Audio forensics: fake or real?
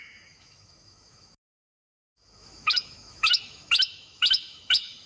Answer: fake